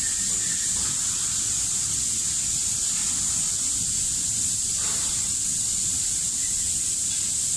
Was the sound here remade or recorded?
recorded